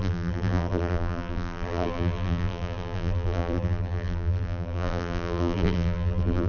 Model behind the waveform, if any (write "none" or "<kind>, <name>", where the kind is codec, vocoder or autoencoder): vocoder, BigVGAN v2